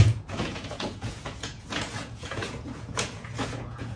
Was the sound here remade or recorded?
remade